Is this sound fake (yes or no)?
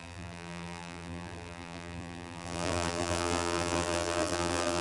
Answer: yes